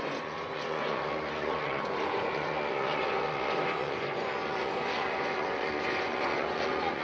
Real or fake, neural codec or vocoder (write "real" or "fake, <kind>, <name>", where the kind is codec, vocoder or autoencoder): fake, vocoder, Vocos